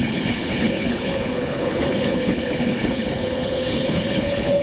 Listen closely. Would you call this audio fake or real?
fake